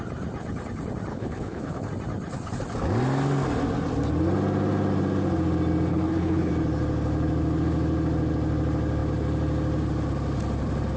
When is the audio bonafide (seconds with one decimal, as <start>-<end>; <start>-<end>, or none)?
0.0-1.1; 1.9-5.9; 6.5-11.0